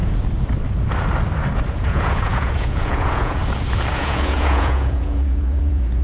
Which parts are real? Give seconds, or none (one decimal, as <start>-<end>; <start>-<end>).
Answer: 0.0-1.7; 3.4-3.9

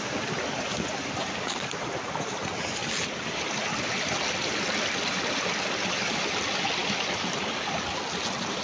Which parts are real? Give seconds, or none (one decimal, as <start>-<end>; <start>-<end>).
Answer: 0.0-8.6

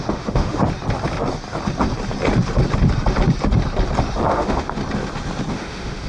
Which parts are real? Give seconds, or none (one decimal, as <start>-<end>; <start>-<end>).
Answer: 0.6-4.3; 4.8-5.5

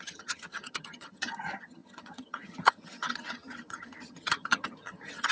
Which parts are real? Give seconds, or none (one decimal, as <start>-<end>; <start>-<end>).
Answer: none

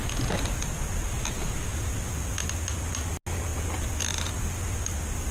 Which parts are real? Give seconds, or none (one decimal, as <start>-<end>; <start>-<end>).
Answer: 0.0-5.3

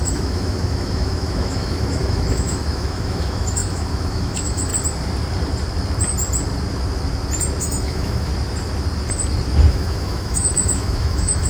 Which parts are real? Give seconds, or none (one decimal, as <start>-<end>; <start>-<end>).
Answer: 4.7-7.6; 8.3-9.7

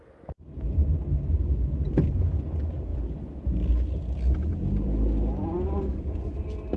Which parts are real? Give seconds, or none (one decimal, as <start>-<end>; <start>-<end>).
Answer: 0.0-2.9; 3.7-4.5; 5.3-6.8

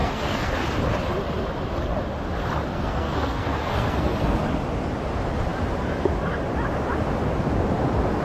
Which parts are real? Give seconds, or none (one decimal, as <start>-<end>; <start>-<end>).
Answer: 0.5-2.7; 4.4-8.2